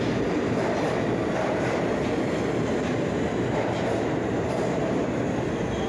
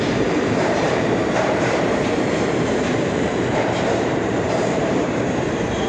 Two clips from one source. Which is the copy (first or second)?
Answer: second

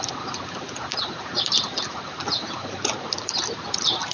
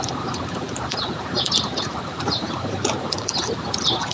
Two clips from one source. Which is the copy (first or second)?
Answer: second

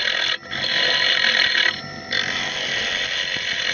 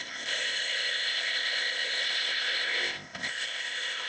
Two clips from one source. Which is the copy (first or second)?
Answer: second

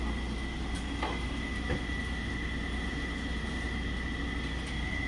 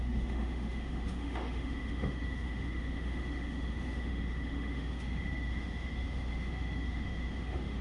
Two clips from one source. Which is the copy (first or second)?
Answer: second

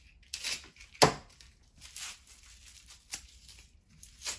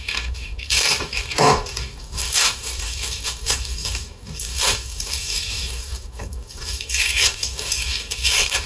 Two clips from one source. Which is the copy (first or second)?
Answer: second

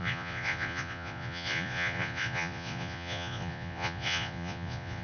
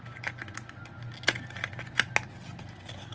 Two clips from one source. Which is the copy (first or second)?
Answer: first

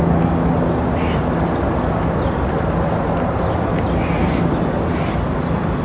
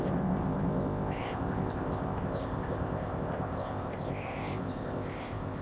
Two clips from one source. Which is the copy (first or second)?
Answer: second